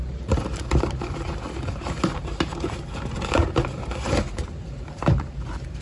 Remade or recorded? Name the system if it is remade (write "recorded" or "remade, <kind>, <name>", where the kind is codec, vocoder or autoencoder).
remade, vocoder, BigVGAN v2